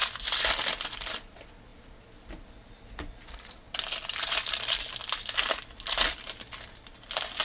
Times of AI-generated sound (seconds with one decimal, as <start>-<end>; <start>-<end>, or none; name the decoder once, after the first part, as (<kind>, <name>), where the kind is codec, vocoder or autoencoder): none